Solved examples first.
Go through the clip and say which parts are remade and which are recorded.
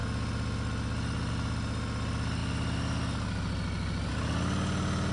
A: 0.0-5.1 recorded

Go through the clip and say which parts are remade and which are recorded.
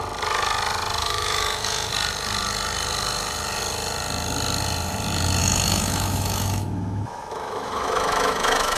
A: 0.0-1.0 recorded; 1.0-1.9 remade; 1.9-5.4 recorded; 5.4-8.8 remade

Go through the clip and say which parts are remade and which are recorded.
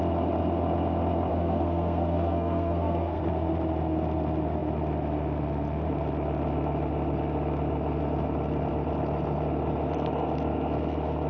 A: 0.0-1.3 recorded; 1.3-3.2 remade; 3.2-11.3 recorded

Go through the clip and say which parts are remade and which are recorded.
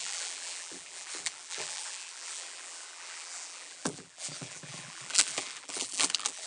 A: 0.0-6.5 remade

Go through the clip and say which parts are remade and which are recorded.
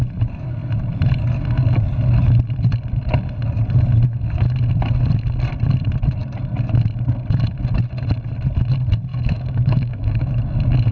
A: 0.0-9.1 recorded; 9.1-10.4 remade; 10.4-10.9 recorded